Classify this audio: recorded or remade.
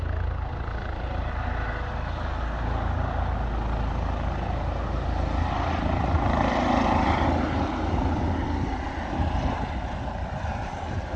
recorded